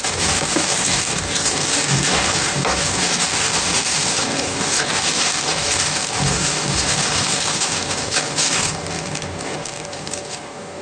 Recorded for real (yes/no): no